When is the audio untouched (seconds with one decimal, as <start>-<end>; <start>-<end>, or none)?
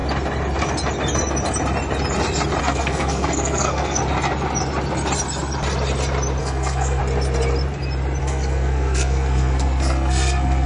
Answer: 0.0-2.6; 4.0-6.4; 7.0-8.2